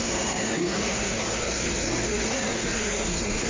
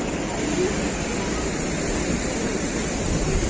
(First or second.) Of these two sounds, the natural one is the second